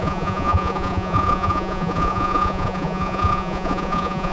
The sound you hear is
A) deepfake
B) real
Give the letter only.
A